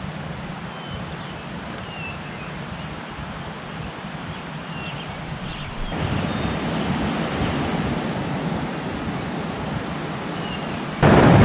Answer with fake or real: real